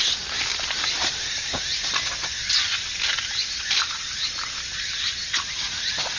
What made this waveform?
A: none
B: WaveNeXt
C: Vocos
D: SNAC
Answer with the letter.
A